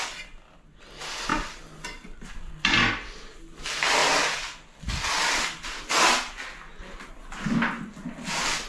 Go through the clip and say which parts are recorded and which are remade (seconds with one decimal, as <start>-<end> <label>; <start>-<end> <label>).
0.0-1.3 recorded; 1.3-2.3 remade; 2.3-4.0 recorded; 4.0-5.8 remade; 5.8-6.7 recorded; 6.7-7.4 remade; 7.4-8.7 recorded